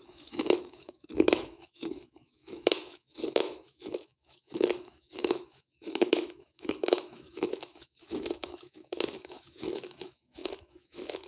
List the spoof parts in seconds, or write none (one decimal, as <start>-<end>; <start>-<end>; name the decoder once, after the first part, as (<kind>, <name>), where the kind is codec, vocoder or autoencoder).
0.0-11.3 (autoencoder, DAC-VAE)